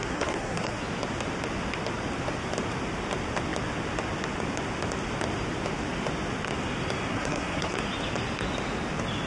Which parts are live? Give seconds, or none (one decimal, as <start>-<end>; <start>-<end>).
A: 0.8-7.1; 7.7-9.3